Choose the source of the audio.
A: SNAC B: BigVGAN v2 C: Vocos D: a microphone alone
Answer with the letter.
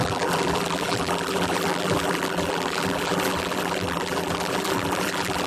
B